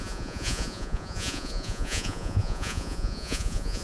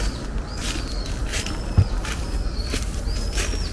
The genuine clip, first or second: second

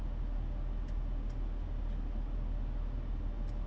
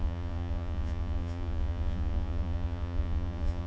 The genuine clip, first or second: first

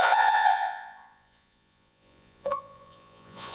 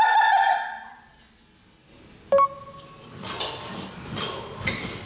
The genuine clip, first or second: second